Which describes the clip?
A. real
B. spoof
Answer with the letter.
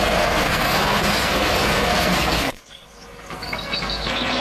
B